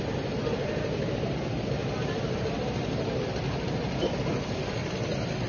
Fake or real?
real